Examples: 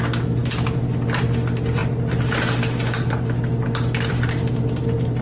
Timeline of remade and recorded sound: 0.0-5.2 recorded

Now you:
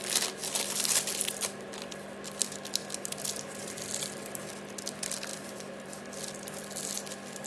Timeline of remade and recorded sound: 0.0-5.3 recorded; 5.3-6.0 remade; 6.0-7.5 recorded

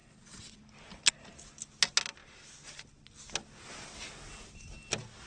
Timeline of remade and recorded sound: 0.0-0.6 remade; 0.6-5.3 recorded

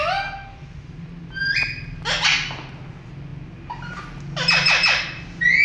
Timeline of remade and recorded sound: 0.0-5.6 recorded

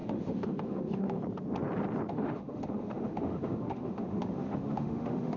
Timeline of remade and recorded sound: 0.0-1.2 remade; 1.2-2.1 recorded; 2.1-5.4 remade